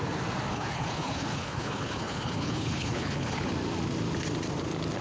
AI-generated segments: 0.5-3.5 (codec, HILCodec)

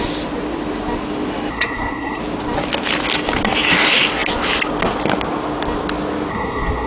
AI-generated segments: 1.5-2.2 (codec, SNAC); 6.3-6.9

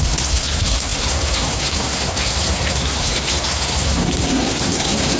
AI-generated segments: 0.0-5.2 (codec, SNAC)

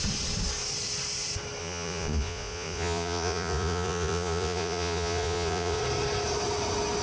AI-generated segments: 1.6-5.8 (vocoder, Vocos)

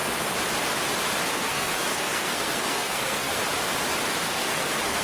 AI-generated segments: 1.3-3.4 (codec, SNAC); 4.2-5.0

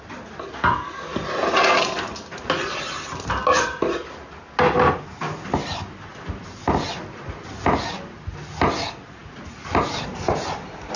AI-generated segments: none

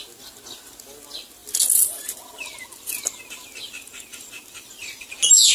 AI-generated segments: none

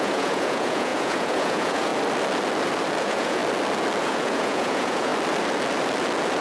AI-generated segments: 0.0-1.9 (vocoder, Vocos); 3.0-3.4; 4.0-5.1